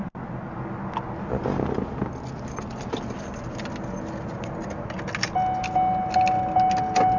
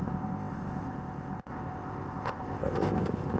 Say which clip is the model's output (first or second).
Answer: second